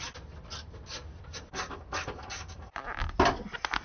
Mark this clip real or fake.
real